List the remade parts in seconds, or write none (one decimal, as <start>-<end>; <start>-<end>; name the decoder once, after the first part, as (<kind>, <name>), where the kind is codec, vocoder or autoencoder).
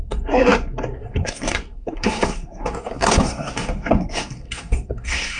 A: 0.0-5.4 (codec, SNAC)